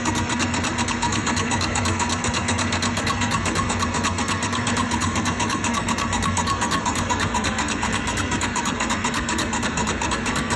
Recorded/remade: remade